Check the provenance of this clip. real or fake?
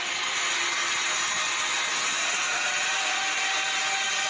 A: real